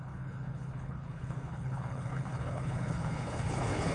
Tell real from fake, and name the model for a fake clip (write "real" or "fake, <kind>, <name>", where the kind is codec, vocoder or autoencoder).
fake, codec, HILCodec